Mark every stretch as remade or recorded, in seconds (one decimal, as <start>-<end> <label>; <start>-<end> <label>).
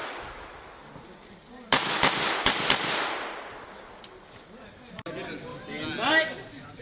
0.0-0.9 remade; 0.9-1.7 recorded; 1.7-2.5 remade; 2.5-6.8 recorded